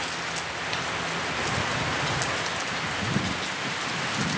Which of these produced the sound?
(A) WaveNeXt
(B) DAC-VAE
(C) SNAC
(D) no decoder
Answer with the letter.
D